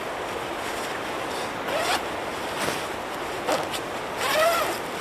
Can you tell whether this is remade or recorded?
recorded